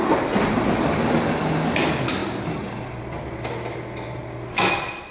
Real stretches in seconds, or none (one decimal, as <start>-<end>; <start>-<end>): 0.0-5.1